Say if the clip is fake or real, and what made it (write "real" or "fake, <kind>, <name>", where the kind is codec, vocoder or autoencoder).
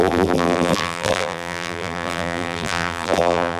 fake, vocoder, BigVGAN v2